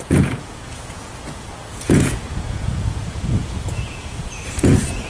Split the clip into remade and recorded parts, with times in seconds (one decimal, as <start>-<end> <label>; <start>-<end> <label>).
0.0-5.1 remade